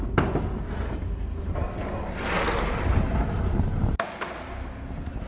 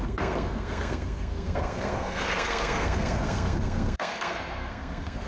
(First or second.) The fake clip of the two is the second